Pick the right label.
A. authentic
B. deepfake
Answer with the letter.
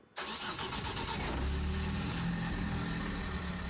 A